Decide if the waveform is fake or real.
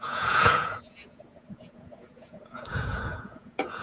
fake